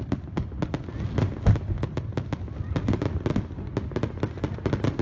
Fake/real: real